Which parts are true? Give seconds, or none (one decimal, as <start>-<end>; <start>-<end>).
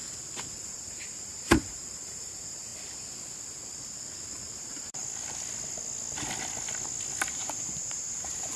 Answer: 0.0-0.7; 2.7-4.6; 5.0-7.3